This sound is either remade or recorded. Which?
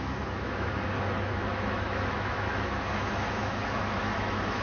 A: remade